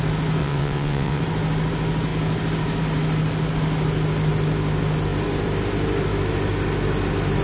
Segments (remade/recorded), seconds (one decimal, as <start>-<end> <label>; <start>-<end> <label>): 0.0-0.4 recorded; 0.4-1.2 remade; 1.2-7.4 recorded

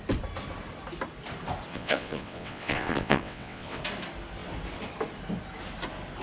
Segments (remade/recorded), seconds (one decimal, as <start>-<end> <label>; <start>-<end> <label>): 0.0-1.7 recorded; 1.7-3.8 remade; 3.8-6.2 recorded